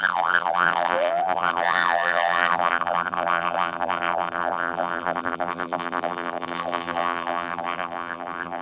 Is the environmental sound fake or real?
fake